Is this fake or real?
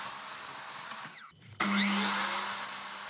real